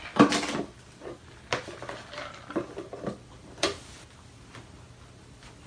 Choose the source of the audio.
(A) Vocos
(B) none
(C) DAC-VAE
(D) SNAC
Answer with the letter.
B